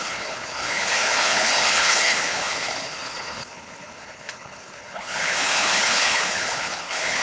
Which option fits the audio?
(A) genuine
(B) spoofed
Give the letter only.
B